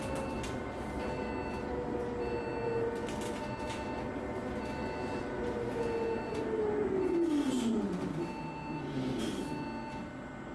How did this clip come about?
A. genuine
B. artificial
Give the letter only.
A